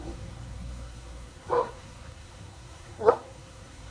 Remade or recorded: remade